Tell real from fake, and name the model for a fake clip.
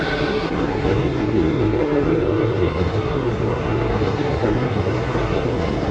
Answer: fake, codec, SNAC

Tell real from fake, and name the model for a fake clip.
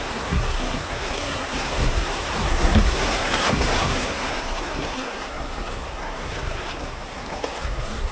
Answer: fake, codec, SNAC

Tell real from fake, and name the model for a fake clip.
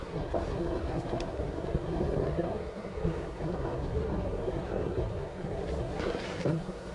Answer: fake, codec, SNAC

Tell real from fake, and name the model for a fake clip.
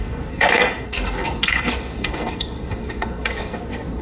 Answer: fake, codec, SNAC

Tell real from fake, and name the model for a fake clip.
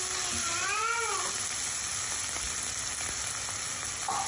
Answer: real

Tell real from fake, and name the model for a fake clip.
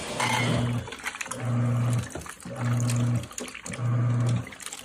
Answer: real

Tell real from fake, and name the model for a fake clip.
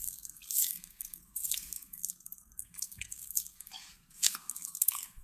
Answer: fake, codec, SNAC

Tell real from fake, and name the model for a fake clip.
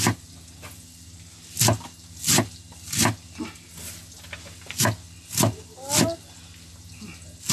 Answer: real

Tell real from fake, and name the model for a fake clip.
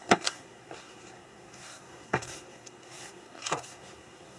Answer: fake, codec, SNAC